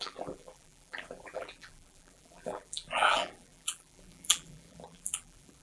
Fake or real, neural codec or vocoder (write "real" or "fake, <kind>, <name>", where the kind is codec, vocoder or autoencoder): fake, vocoder, BigVGAN v2